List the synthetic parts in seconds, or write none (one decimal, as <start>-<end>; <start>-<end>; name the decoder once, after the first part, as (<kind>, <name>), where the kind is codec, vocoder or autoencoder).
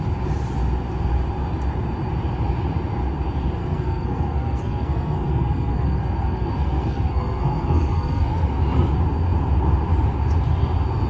3.6-8.6 (codec, SNAC)